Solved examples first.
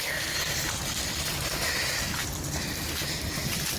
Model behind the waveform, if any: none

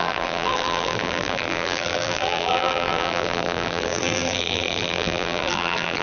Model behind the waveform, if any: vocoder, BigVGAN v2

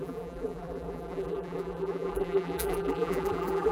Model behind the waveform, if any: vocoder, BigVGAN v2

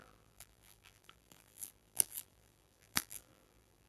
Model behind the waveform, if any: vocoder, BigVGAN v2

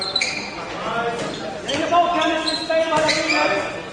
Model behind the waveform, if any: none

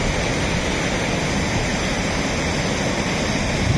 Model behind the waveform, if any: none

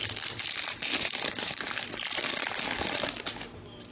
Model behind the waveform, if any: none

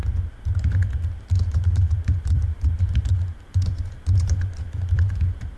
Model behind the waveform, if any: vocoder, BigVGAN v2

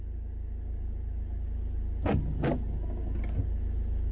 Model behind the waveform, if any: none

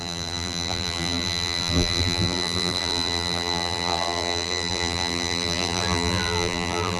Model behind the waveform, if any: vocoder, BigVGAN v2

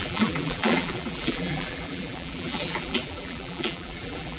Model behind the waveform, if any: vocoder, BigVGAN v2